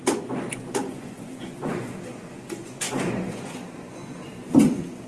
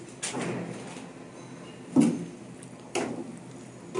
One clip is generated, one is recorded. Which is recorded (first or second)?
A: second